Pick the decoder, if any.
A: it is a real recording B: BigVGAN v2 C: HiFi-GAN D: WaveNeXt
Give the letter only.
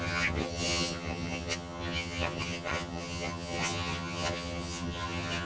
C